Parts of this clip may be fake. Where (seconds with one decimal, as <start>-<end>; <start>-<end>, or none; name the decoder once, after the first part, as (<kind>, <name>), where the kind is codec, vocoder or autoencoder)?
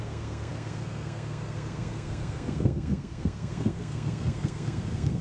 0.0-5.2 (codec, SNAC)